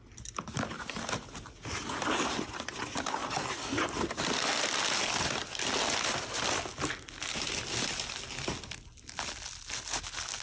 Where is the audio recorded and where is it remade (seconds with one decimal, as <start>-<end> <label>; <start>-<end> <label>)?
0.0-10.4 recorded